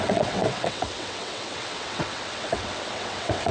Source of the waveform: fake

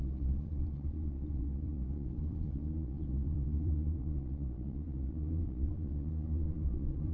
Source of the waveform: fake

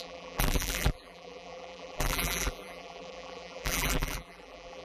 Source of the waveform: fake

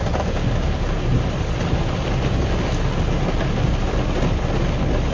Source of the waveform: real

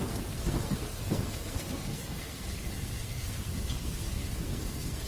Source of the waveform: fake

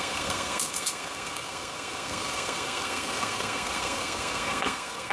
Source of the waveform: fake